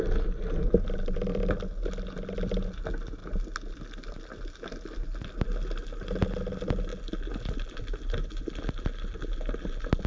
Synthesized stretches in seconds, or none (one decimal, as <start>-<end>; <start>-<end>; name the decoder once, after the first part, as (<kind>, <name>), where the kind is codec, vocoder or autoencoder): none